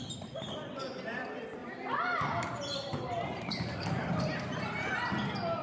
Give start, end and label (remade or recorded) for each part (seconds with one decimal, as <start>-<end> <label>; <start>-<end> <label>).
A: 0.0-1.6 recorded; 1.6-5.0 remade; 5.0-5.6 recorded